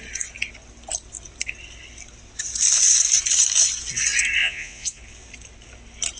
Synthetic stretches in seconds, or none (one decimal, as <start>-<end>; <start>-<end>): 4.4-5.0